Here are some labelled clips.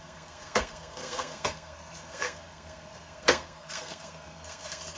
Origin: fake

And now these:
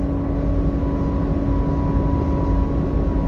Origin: real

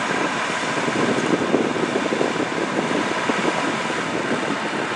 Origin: real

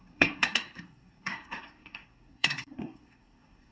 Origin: fake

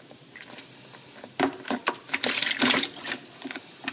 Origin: real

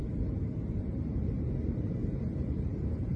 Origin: fake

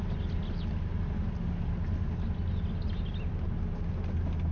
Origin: real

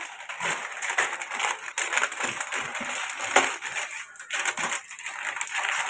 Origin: real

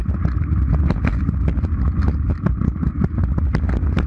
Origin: real